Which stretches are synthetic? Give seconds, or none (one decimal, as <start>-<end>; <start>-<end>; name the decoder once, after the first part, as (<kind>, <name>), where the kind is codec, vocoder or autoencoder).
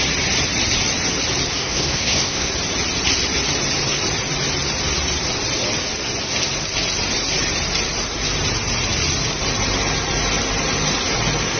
1.6-2.5 (codec, SNAC)